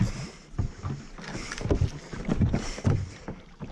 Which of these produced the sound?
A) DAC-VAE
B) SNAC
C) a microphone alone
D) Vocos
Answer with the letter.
C